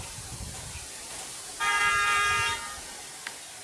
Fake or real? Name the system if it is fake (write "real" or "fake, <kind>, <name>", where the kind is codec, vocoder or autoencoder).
fake, vocoder, BigVGAN v2